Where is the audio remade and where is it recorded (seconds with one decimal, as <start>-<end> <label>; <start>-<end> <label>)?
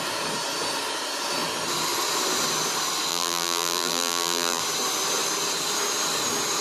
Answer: 0.0-3.1 recorded; 3.1-4.6 remade; 4.6-6.6 recorded